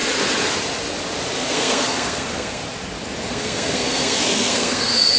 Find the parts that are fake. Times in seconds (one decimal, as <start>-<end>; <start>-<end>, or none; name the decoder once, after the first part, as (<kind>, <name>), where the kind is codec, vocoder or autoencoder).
1.5-2.6 (codec, SNAC); 3.3-5.2